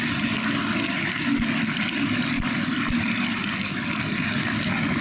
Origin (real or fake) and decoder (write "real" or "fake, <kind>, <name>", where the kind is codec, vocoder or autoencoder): real